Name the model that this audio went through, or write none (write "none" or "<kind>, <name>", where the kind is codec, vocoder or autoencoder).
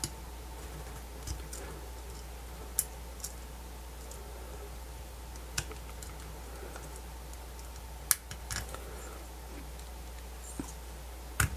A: none